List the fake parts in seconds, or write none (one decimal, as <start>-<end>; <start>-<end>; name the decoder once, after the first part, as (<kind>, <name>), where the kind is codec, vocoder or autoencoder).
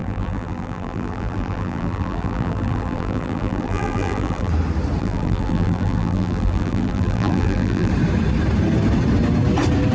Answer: 0.0-4.5 (vocoder, BigVGAN v2); 5.0-7.9